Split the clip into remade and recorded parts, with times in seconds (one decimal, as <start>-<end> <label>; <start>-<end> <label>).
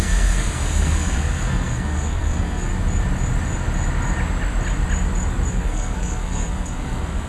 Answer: 0.0-2.7 remade; 2.7-5.5 recorded; 5.5-7.3 remade